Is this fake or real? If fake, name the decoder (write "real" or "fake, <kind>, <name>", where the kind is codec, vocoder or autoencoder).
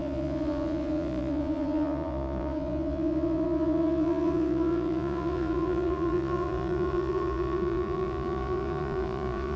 fake, vocoder, Vocos